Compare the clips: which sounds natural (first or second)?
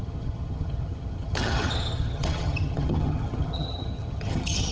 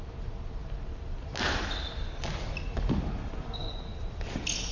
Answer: second